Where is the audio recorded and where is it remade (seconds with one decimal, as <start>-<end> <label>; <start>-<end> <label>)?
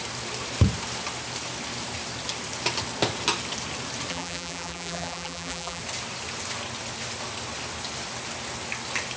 0.0-4.1 recorded; 4.1-5.8 remade; 5.8-9.2 recorded